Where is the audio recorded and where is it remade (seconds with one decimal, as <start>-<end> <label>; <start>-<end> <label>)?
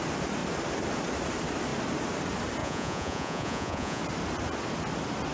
0.0-2.6 recorded; 2.6-4.0 remade; 4.0-5.3 recorded